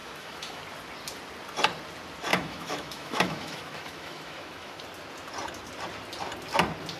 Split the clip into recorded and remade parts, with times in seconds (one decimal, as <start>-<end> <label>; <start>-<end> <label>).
0.0-0.6 remade; 0.6-2.3 recorded; 2.3-4.7 remade; 4.7-7.0 recorded